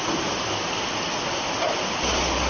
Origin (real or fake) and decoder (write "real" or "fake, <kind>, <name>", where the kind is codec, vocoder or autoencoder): real